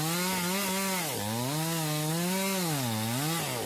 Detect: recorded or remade recorded